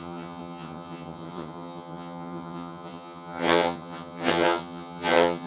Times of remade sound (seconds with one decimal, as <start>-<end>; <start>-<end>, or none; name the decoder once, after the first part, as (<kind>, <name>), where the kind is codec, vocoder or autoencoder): 0.0-5.5 (vocoder, HiFi-GAN)